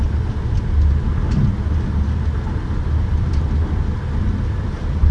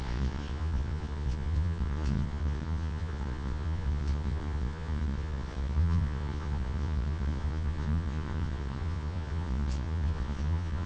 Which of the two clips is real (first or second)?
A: first